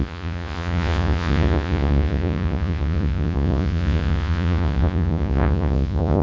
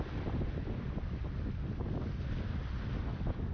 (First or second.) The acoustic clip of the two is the second